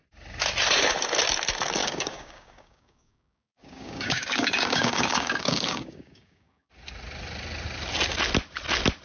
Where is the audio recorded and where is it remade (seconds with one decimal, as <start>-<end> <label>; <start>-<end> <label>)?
0.0-1.8 recorded; 1.8-6.7 remade; 6.7-9.0 recorded